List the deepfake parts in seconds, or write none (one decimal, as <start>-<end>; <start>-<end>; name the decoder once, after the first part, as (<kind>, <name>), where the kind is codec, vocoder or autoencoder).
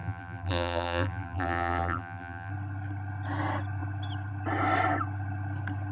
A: 0.0-2.5 (vocoder, BigVGAN v2)